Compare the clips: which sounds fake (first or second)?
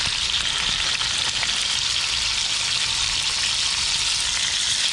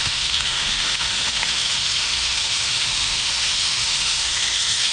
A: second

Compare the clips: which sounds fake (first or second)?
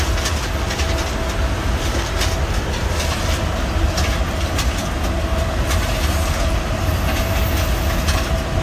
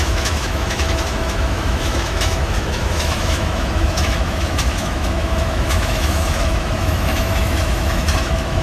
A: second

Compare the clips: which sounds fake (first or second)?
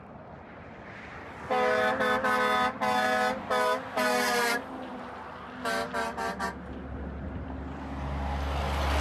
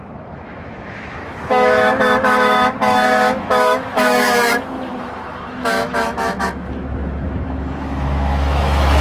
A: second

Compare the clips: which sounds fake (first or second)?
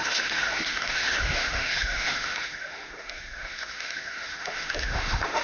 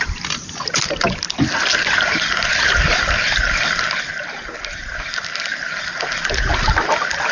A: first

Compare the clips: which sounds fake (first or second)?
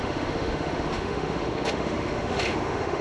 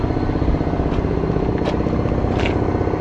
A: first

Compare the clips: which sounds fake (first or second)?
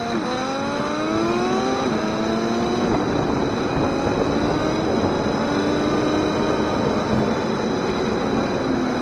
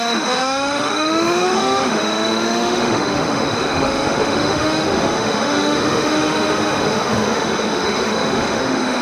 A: second